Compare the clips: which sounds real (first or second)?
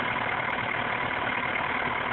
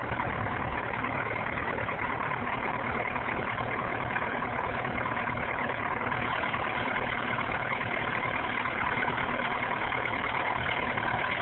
first